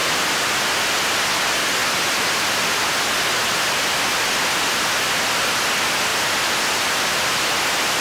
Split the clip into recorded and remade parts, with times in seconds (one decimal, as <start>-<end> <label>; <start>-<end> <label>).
0.0-8.0 recorded